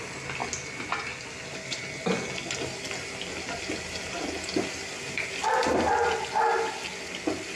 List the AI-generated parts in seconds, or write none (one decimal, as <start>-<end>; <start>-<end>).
none